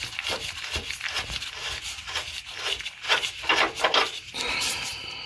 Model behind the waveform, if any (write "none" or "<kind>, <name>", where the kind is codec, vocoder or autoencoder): none